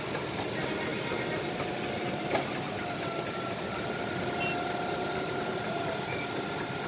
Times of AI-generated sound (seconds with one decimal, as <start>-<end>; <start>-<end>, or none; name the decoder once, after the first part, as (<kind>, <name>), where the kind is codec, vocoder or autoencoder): none

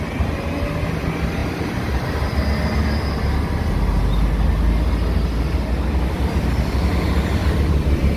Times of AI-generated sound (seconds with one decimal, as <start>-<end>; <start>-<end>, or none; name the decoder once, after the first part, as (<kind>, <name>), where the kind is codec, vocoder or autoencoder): 1.4-1.9 (vocoder, BigVGAN v2)

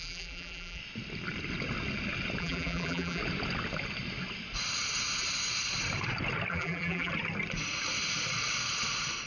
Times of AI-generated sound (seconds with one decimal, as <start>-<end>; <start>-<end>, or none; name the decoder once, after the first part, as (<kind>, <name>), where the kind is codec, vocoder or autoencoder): 0.0-0.8 (vocoder, BigVGAN v2); 2.4-3.2; 6.5-7.1

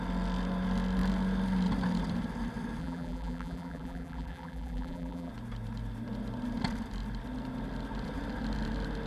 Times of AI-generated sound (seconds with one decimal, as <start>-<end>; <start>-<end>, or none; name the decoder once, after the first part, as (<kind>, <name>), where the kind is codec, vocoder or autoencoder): 2.8-5.3 (vocoder, BigVGAN v2)

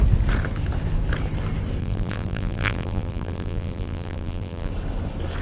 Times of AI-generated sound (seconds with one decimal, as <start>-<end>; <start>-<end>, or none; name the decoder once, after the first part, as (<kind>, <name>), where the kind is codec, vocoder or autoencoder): 1.8-4.7 (vocoder, BigVGAN v2)

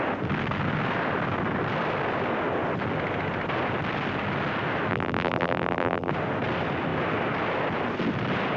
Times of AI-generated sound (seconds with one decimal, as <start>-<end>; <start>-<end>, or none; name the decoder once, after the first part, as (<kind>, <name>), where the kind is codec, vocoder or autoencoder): 4.9-6.1 (vocoder, BigVGAN v2)

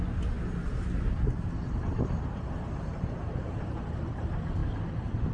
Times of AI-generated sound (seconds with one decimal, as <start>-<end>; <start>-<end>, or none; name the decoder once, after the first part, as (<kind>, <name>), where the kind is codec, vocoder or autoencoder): 0.6-3.8 (vocoder, BigVGAN v2)